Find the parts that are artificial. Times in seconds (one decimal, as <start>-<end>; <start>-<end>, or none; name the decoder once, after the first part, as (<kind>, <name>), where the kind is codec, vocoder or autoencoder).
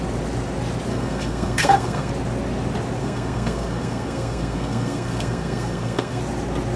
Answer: 0.9-2.1 (codec, SNAC); 3.0-6.2